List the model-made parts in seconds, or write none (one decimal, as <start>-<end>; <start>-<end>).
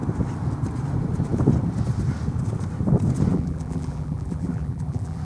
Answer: 3.3-5.2